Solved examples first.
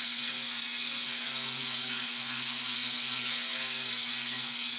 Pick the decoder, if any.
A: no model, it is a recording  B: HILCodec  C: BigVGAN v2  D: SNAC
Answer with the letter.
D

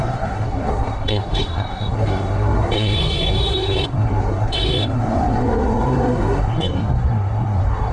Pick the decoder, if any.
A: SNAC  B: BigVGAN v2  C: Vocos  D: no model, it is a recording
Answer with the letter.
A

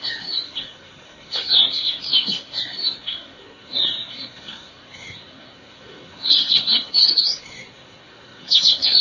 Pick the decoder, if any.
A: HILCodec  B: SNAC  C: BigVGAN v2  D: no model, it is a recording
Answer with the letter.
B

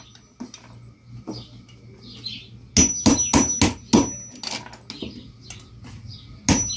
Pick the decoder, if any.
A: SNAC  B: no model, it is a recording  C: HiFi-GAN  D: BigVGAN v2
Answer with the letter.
B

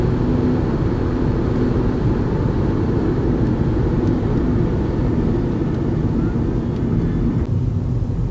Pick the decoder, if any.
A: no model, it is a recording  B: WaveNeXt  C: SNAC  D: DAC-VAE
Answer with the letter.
A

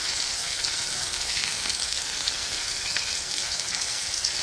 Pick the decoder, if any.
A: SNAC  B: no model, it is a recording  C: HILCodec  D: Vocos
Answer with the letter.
A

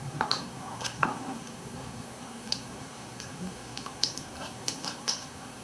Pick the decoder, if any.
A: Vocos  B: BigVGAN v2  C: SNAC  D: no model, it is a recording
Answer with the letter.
C